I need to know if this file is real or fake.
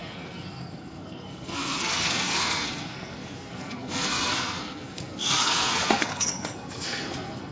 fake